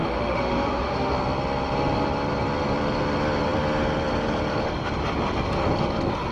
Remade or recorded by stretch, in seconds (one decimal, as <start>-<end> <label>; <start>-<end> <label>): 0.0-1.1 remade; 1.1-6.3 recorded